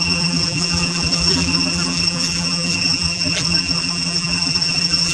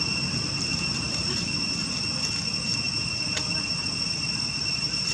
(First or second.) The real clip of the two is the second